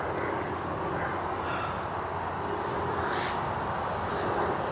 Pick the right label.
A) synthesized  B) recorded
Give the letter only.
B